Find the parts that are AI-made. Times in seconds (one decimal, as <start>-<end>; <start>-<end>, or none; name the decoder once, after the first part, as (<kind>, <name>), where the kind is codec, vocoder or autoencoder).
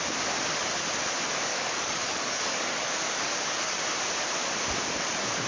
1.5-3.8 (codec, DAC)